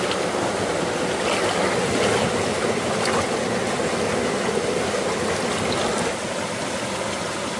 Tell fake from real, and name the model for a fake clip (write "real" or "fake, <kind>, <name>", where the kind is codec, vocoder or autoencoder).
real